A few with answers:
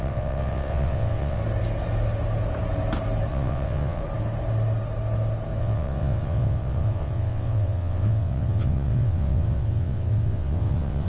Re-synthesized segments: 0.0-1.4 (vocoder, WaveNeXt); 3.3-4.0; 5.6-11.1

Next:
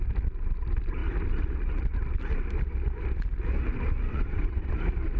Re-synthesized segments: 4.1-4.7 (vocoder, WaveNeXt)

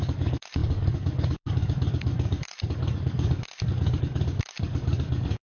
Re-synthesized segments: 0.0-5.6 (codec, DAC)

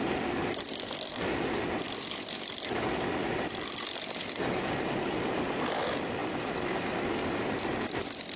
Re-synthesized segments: 6.2-6.9 (vocoder, BigVGAN v2)

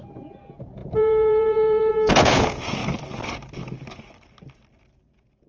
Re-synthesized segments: 0.0-2.8 (vocoder, Vocos); 5.1-5.5

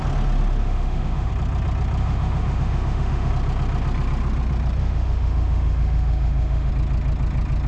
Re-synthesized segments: 0.6-1.3 (autoencoder, DAC-VAE); 2.0-3.3; 4.8-6.7

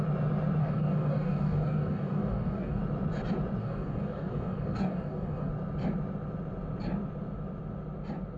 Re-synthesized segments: 0.6-2.8 (codec, DAC); 3.6-5.5